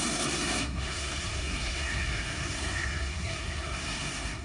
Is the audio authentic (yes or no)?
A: no